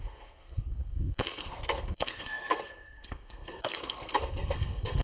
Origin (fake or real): fake